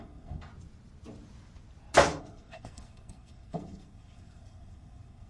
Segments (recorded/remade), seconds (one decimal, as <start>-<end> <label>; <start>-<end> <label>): 0.0-0.5 remade; 0.5-2.2 recorded; 2.2-5.3 remade